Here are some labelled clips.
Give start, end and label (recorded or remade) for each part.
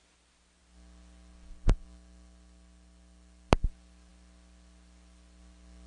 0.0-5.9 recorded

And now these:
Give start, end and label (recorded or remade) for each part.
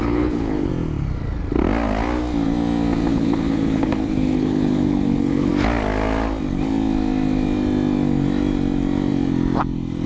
0.0-0.7 remade; 0.7-3.1 recorded; 3.1-5.5 remade; 5.5-10.1 recorded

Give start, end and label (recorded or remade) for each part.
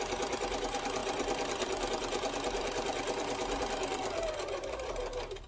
0.0-1.0 recorded; 1.0-4.3 remade; 4.3-5.5 recorded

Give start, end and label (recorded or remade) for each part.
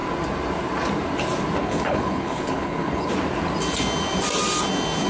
0.0-1.6 recorded; 1.6-3.1 remade; 3.1-5.1 recorded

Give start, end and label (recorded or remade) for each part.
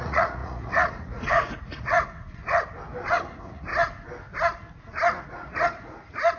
0.0-2.4 remade; 2.4-3.0 recorded; 3.0-3.7 remade; 3.7-5.2 recorded; 5.2-6.4 remade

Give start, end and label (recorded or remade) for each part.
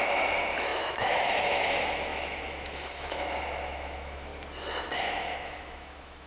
0.0-4.3 remade; 4.3-5.0 recorded; 5.0-6.3 remade